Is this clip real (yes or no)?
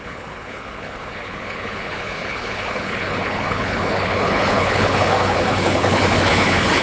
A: no